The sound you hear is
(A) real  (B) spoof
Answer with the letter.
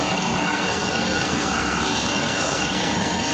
B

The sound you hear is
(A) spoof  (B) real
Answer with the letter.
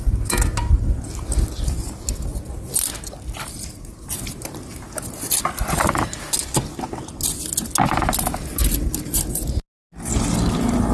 B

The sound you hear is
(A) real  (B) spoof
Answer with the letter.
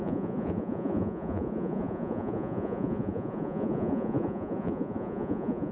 B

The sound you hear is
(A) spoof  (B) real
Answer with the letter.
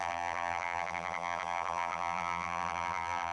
A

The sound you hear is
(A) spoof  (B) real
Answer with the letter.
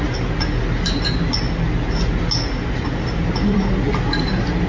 B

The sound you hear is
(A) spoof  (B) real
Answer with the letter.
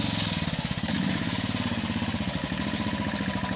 B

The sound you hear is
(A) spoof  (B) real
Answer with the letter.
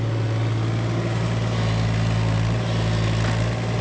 B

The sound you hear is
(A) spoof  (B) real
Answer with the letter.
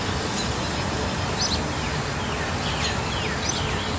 B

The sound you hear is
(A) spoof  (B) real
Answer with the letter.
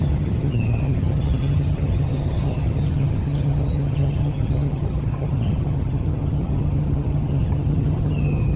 A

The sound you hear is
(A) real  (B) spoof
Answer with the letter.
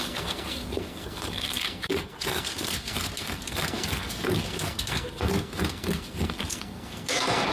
B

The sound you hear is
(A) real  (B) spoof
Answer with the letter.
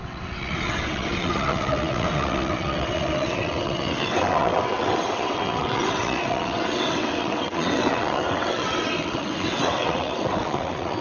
B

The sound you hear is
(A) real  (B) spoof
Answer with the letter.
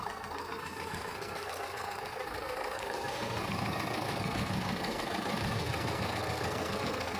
B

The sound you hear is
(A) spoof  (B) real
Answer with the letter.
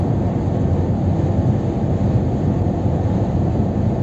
B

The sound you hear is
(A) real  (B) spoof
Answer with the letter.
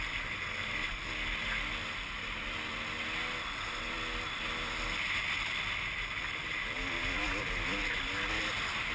A